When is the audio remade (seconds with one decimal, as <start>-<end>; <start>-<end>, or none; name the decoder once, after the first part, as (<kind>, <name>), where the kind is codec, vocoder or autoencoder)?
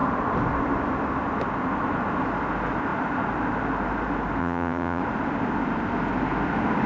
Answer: 4.4-5.0 (vocoder, HiFi-GAN)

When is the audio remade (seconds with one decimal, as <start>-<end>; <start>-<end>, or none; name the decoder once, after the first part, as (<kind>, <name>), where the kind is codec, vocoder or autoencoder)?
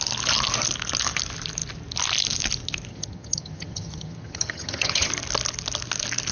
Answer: 2.9-5.1 (vocoder, HiFi-GAN)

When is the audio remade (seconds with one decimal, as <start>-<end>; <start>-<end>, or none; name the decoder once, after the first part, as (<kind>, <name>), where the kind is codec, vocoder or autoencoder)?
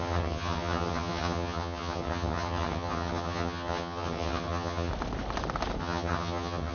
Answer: 0.0-4.9 (vocoder, HiFi-GAN); 5.8-6.7